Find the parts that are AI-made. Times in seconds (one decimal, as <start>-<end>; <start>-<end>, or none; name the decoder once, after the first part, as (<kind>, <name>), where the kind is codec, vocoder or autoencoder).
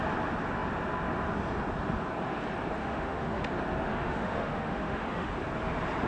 2.8-3.5 (autoencoder, DAC-VAE); 3.9-5.3